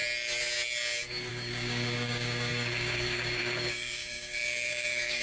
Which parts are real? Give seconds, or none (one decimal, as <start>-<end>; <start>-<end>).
0.0-1.3